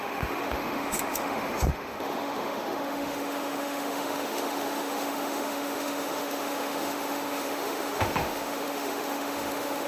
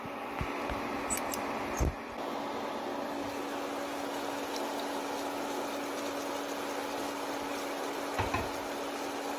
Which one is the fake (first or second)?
first